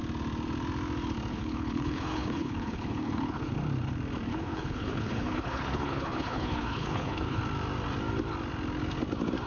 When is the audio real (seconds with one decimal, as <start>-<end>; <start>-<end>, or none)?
0.0-1.3; 3.5-4.3; 7.4-9.5